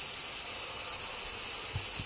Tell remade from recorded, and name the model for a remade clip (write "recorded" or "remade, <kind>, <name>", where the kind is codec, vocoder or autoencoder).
recorded